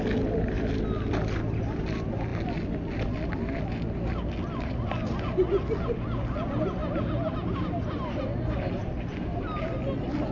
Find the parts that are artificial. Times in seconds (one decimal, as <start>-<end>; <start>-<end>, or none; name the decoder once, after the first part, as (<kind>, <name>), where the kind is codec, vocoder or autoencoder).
none